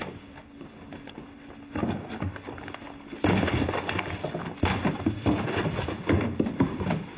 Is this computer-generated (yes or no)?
no